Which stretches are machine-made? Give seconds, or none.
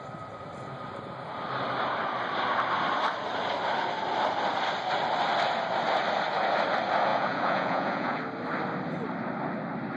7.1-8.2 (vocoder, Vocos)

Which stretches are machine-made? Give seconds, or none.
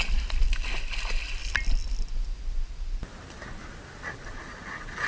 none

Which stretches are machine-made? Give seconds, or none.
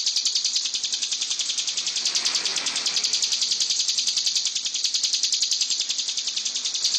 none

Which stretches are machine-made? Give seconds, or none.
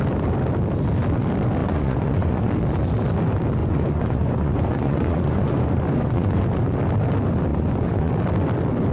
1.6-2.5 (vocoder, Vocos); 3.6-6.4; 7.5-8.1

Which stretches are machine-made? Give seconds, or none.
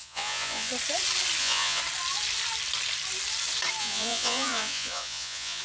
0.0-0.7 (vocoder, Vocos); 1.4-1.8; 3.8-5.6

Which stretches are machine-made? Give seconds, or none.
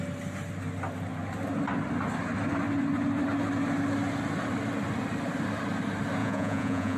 6.2-7.0 (vocoder, Vocos)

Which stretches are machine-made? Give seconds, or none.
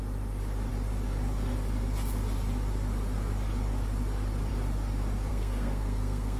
5.3-6.4 (codec, SNAC)